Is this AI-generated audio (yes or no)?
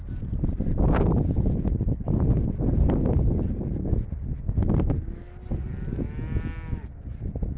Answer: no